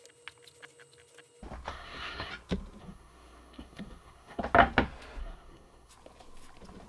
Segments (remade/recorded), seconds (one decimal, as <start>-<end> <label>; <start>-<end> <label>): 0.0-1.7 recorded; 1.7-2.3 remade; 2.3-2.8 recorded; 2.8-4.4 remade; 4.4-5.2 recorded; 5.2-5.9 remade; 5.9-6.9 recorded